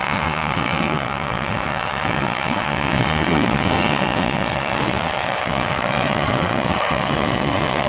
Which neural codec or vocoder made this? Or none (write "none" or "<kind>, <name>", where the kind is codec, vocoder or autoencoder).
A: vocoder, WaveNeXt